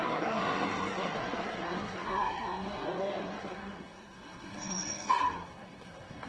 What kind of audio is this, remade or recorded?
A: remade